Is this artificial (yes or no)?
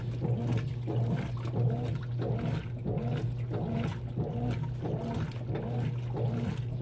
no